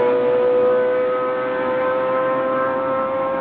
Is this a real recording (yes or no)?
yes